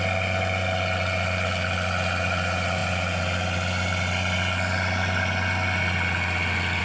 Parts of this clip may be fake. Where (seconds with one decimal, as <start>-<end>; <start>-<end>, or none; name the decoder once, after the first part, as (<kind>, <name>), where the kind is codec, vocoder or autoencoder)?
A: none

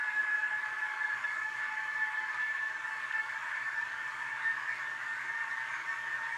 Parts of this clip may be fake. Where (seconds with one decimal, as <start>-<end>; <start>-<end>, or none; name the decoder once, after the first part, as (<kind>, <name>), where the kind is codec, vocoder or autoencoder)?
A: 0.0-6.4 (codec, DAC)

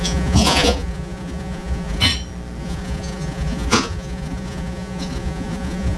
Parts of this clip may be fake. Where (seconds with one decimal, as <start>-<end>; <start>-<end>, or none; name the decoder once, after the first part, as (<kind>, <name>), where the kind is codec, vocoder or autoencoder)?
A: 0.0-2.1 (vocoder, Vocos); 2.6-6.0

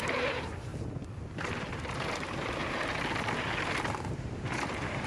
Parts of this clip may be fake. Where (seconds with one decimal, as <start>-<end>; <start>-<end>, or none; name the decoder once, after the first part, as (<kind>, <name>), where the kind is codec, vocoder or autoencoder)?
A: 0.0-0.7 (vocoder, BigVGAN v2); 1.7-2.6; 4.1-5.1